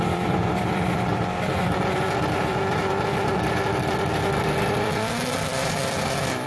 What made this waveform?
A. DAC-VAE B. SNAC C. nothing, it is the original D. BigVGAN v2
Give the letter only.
D